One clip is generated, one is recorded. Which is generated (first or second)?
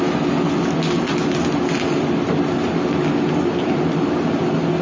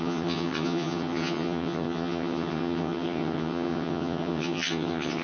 second